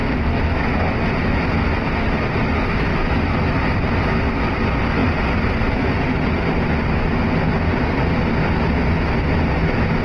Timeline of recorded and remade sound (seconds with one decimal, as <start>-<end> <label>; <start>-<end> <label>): 0.0-1.1 remade; 1.1-2.9 recorded; 2.9-3.6 remade; 3.6-10.0 recorded